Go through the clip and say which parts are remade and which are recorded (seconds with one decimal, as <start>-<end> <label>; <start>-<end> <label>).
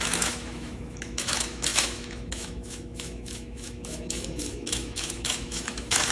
0.0-6.1 remade